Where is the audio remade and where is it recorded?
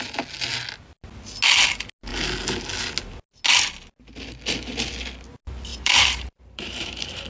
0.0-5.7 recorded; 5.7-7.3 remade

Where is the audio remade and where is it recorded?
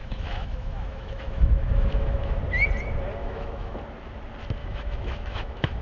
0.0-2.4 remade; 2.4-3.2 recorded; 3.2-3.8 remade; 3.8-4.6 recorded; 4.6-5.8 remade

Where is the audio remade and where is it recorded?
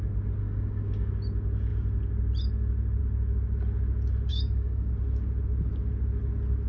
0.0-0.4 recorded; 0.4-1.1 remade; 1.1-4.3 recorded; 4.3-4.9 remade; 4.9-6.7 recorded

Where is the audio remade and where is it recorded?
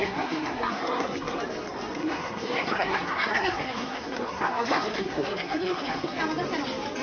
0.0-1.4 remade; 1.4-2.0 recorded; 2.0-6.2 remade; 6.2-7.0 recorded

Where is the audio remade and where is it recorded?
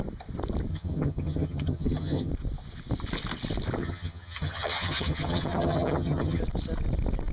0.0-0.7 recorded; 0.7-2.3 remade; 2.3-3.8 recorded; 3.8-6.4 remade; 6.4-7.3 recorded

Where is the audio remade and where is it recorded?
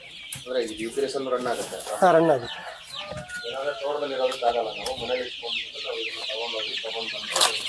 0.0-1.0 recorded; 1.0-1.9 remade; 1.9-3.6 recorded; 3.6-4.5 remade; 4.5-7.7 recorded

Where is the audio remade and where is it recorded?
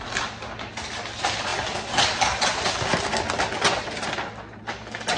0.0-5.2 recorded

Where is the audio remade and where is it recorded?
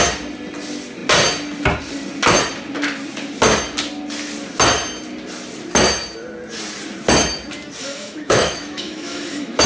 0.0-7.8 recorded; 7.8-9.7 remade